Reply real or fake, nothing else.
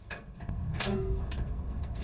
fake